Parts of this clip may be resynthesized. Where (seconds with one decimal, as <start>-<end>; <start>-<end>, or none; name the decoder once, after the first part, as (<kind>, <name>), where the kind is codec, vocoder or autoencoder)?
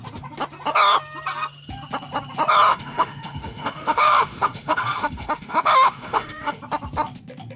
2.7-6.6 (autoencoder, DAC-VAE)